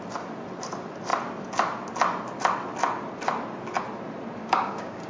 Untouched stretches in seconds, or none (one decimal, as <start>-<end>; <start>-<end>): 0.0-4.4